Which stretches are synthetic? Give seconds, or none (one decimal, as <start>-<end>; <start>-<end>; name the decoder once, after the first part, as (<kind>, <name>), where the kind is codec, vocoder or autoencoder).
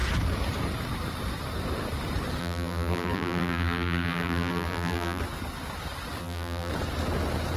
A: 2.4-5.2 (vocoder, BigVGAN v2); 6.2-6.7